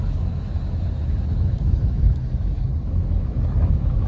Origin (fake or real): fake